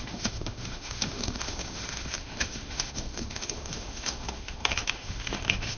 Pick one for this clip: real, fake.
fake